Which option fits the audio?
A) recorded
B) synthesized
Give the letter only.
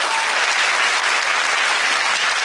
A